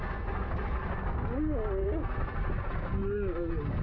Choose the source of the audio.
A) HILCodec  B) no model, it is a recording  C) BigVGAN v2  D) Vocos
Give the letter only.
B